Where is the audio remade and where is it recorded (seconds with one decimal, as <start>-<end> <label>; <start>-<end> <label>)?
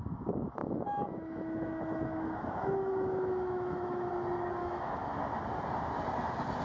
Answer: 0.0-0.6 recorded; 0.6-4.1 remade; 4.1-4.6 recorded; 4.6-5.1 remade; 5.1-6.6 recorded